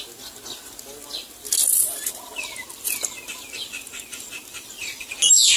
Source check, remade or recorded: recorded